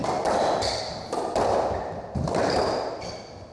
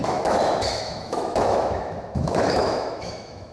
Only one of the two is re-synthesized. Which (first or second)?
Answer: second